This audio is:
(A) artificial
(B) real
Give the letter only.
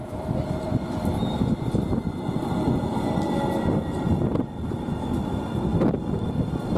B